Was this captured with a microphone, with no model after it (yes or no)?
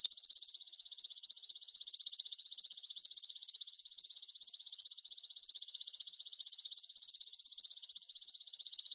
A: no